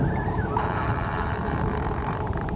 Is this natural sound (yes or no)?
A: no